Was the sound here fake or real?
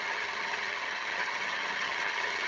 fake